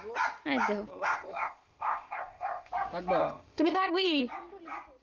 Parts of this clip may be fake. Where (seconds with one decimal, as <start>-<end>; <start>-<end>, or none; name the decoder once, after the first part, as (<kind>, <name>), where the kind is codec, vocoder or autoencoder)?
0.9-2.7 (codec, ZipCodec); 3.2-4.2